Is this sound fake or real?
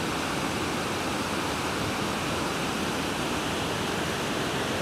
real